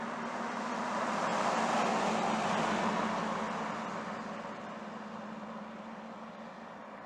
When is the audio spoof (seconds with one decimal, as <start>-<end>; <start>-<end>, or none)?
none